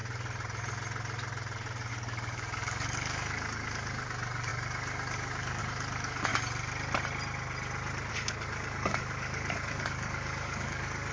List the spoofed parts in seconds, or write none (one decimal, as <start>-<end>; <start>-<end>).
1.9-6.3; 8.1-11.1

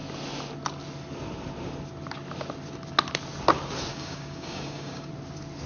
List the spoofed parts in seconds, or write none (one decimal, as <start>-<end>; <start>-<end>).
3.9-5.1

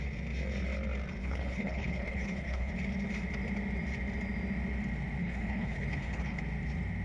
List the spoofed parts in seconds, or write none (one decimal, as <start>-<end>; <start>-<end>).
1.2-2.7; 5.2-6.4

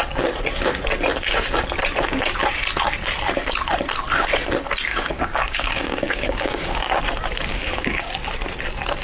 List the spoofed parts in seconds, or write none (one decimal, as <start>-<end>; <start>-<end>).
4.9-7.0; 7.5-8.1

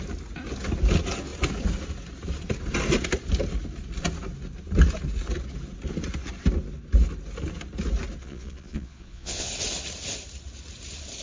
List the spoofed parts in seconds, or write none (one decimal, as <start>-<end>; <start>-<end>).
8.2-9.5